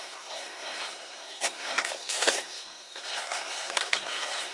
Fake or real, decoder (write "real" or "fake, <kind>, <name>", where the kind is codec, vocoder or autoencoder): fake, codec, SNAC